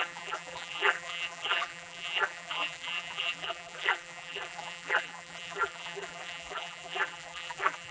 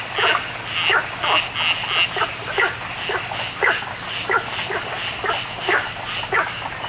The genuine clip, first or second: second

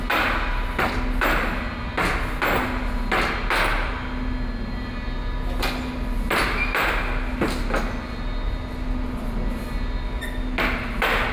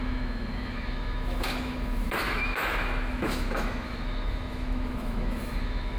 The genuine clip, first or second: first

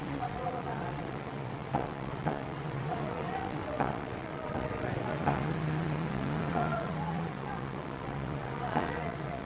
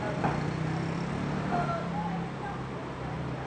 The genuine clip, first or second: second